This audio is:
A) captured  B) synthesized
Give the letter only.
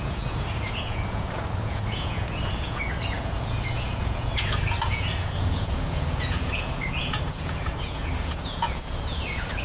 B